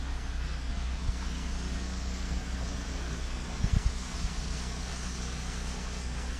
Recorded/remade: remade